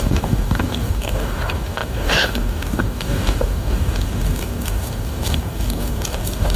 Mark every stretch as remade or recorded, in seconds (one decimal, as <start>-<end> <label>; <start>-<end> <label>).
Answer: 0.0-6.6 remade